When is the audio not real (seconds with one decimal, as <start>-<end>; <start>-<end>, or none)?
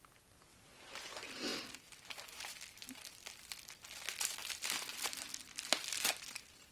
none